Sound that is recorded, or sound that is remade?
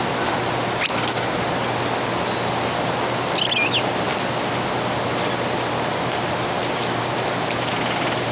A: recorded